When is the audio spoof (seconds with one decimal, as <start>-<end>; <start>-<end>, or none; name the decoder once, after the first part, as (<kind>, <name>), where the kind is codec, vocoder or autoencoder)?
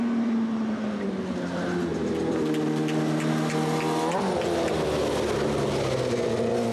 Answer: none